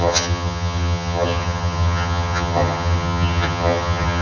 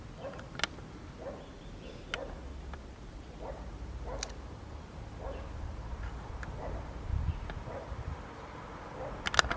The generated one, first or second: first